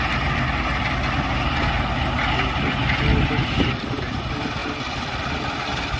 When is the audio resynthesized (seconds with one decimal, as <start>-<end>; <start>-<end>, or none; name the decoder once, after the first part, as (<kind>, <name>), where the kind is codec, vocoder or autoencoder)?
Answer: none